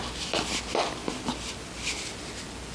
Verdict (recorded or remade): recorded